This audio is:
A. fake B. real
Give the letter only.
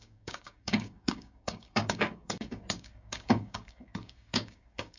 A